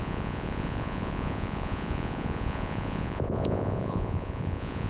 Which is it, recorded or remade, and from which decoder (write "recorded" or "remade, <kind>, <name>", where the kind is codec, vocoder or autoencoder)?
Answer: remade, vocoder, Vocos